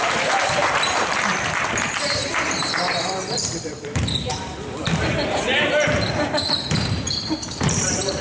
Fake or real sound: fake